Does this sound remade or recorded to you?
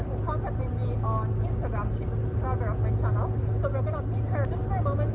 recorded